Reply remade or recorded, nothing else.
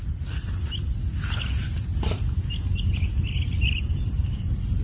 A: recorded